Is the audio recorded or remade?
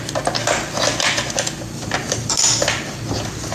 recorded